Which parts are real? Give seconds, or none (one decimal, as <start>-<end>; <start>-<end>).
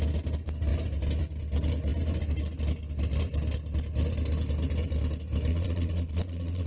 0.0-5.5